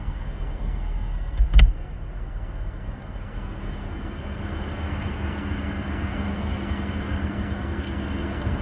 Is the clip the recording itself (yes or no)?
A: no